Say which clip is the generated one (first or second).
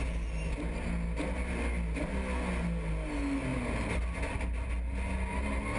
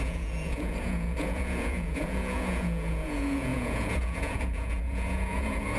second